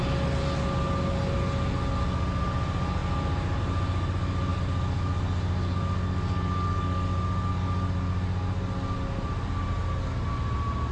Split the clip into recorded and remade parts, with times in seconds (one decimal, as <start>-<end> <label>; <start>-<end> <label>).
0.0-10.9 recorded